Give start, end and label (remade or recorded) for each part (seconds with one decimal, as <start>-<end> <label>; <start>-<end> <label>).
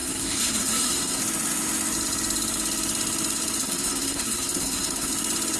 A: 0.0-1.2 remade; 1.2-3.6 recorded; 3.6-5.1 remade; 5.1-5.6 recorded